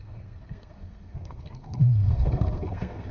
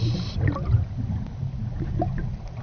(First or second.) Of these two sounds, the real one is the second